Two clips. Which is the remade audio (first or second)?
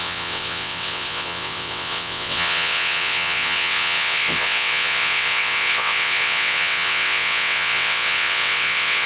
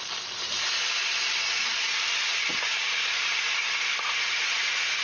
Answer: first